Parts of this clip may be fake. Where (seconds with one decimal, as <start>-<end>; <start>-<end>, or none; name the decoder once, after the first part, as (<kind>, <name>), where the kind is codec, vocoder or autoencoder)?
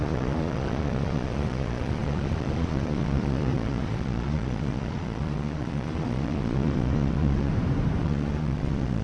0.0-7.5 (vocoder, Vocos); 8.0-9.0